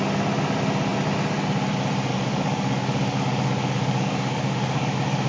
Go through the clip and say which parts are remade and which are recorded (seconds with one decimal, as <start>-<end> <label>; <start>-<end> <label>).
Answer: 0.0-2.1 recorded; 2.1-5.3 remade